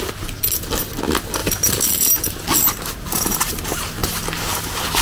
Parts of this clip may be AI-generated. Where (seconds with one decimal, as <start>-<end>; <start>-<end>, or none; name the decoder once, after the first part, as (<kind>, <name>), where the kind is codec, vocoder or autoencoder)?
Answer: none